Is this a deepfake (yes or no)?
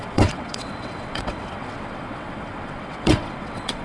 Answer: yes